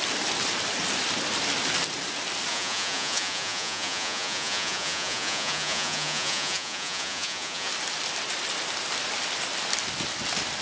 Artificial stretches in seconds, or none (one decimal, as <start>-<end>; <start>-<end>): 2.5-7.7